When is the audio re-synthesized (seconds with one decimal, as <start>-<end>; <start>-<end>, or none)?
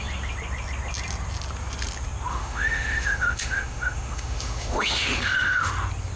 2.3-5.7